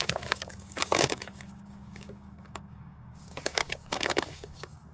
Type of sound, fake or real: fake